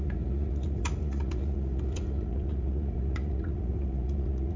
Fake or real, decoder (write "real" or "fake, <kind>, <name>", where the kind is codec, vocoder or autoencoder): fake, vocoder, Vocos